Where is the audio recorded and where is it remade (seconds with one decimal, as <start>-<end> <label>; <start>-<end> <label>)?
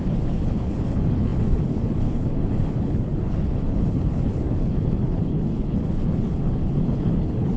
0.0-7.6 remade